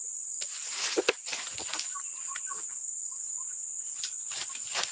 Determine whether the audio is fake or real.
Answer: real